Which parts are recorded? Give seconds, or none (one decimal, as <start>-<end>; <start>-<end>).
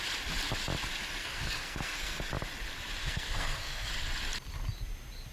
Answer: 0.0-1.2; 2.3-3.0; 3.9-5.3